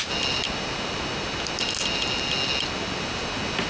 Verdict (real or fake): real